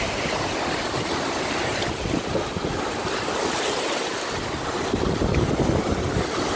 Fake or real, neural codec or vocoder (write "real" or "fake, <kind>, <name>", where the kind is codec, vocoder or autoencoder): real